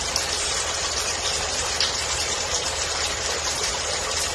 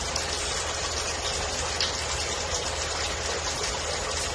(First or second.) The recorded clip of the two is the second